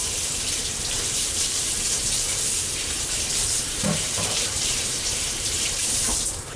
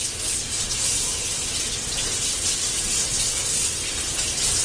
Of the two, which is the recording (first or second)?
second